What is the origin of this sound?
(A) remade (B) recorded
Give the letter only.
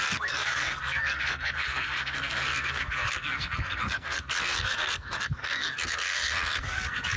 A